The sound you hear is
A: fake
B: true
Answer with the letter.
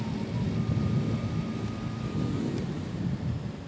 B